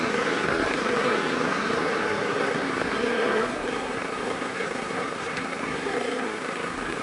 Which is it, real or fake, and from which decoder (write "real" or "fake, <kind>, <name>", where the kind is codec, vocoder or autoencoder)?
fake, codec, SNAC